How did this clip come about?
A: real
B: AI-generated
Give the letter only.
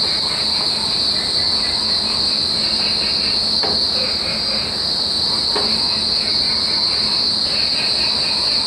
A